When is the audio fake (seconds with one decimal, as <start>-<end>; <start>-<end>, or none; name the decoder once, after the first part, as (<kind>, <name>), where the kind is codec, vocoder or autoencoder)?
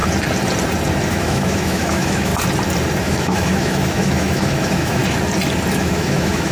1.1-2.3 (autoencoder, DAC-VAE); 3.0-5.0; 5.8-6.5